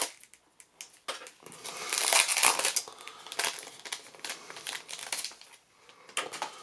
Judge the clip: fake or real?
real